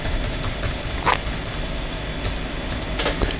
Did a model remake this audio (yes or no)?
no